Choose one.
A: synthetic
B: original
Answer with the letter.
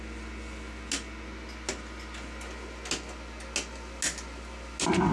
B